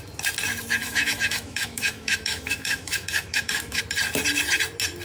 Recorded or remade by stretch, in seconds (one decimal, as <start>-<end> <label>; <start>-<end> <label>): 0.0-0.8 recorded; 0.8-3.8 remade; 3.8-5.0 recorded